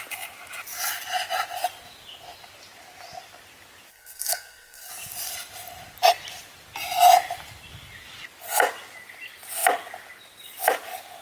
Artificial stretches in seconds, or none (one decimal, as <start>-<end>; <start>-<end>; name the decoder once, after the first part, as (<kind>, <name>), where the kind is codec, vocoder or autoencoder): 3.9-4.9 (codec, SNAC)